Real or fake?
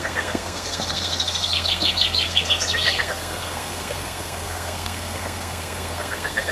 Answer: fake